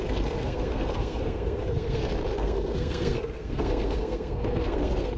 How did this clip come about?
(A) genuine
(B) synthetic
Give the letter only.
B